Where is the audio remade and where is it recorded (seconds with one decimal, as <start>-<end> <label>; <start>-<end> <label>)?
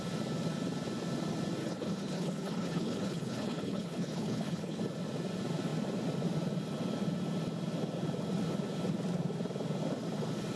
0.0-1.6 recorded; 1.6-4.8 remade; 4.8-10.6 recorded